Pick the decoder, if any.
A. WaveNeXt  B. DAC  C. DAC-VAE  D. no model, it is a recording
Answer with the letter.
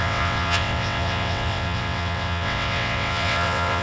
A